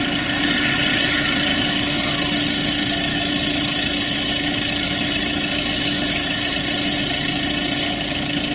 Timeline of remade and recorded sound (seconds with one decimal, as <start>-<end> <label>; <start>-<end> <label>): 0.0-1.5 recorded; 1.5-2.0 remade; 2.0-3.1 recorded; 3.1-6.5 remade; 6.5-8.5 recorded